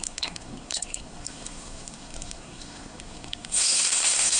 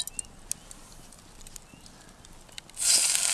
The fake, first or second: first